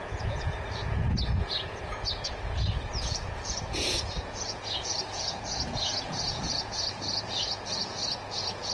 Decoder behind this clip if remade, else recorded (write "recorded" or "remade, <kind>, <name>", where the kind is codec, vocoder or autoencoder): remade, vocoder, Vocos